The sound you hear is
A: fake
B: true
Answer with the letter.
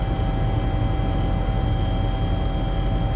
B